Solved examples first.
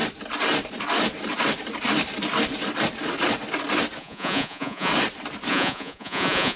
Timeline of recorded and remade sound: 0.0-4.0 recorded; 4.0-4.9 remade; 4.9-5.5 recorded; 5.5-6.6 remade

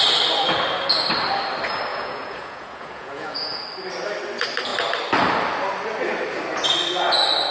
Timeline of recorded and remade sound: 0.0-1.9 recorded; 1.9-3.6 remade; 3.6-7.5 recorded